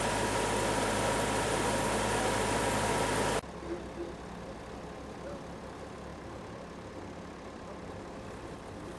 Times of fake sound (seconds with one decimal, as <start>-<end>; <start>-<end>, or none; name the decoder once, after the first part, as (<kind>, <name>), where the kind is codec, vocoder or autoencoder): 6.1-8.6 (vocoder, BigVGAN v2)